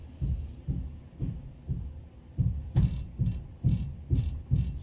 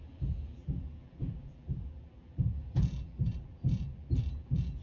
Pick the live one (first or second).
first